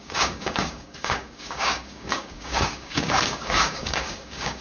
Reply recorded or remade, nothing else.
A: remade